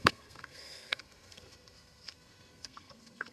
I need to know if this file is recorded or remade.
remade